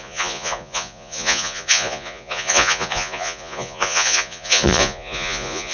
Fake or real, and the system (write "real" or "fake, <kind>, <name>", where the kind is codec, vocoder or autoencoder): fake, vocoder, Vocos